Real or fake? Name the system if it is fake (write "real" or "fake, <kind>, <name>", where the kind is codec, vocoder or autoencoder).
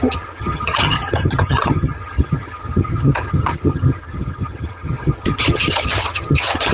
fake, vocoder, HiFi-GAN